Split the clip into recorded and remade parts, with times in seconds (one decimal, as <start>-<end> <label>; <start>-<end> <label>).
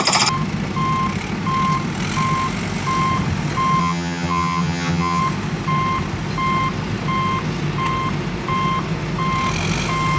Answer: 0.0-3.8 recorded; 3.8-5.2 remade; 5.2-10.2 recorded